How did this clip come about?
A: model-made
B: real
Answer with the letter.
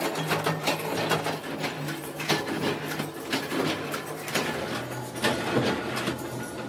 B